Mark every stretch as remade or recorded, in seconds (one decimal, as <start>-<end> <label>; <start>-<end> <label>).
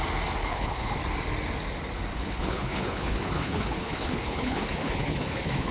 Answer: 0.0-0.4 recorded; 0.4-1.0 remade; 1.0-2.1 recorded; 2.1-5.7 remade